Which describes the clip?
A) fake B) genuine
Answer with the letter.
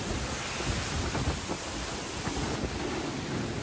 B